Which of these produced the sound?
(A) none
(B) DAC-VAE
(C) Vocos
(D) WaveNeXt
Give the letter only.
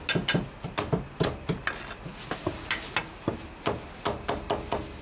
A